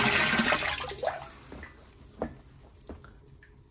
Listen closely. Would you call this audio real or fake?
real